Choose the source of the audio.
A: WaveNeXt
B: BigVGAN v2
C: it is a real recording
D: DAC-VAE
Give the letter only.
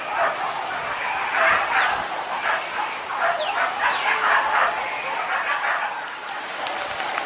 C